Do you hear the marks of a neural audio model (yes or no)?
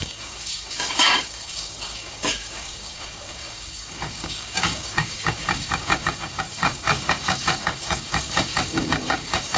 yes